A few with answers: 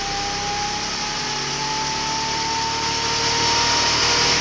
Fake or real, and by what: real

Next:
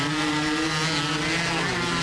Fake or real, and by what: real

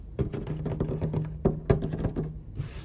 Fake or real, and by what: real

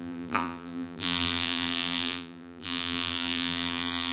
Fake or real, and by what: fake, vocoder, BigVGAN v2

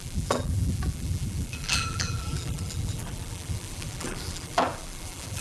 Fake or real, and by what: fake, vocoder, BigVGAN v2